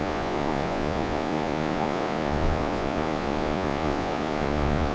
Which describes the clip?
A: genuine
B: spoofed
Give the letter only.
B